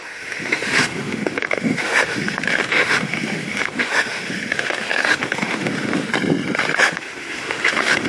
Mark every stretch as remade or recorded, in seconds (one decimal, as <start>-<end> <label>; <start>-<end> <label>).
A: 0.0-6.1 remade; 6.1-6.8 recorded; 6.8-8.1 remade